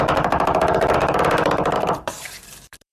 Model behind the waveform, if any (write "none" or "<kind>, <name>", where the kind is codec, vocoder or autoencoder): vocoder, BigVGAN v2